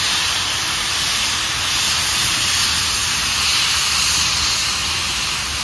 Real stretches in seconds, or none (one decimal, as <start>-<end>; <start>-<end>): 0.0-5.6